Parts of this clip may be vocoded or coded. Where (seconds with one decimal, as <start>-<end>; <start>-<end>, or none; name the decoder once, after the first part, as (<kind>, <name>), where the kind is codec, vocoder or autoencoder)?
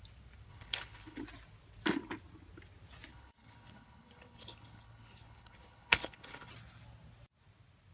0.5-1.2 (codec, HILCodec); 3.1-6.5